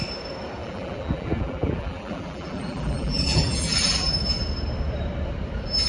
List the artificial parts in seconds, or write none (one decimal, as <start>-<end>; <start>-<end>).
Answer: 0.6-4.1